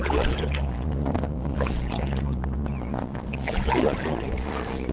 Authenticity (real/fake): fake